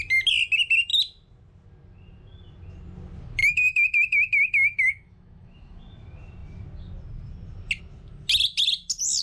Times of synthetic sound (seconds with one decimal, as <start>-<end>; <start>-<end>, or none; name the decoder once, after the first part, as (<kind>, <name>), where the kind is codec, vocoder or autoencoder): 3.4-5.8 (autoencoder, DAC-VAE)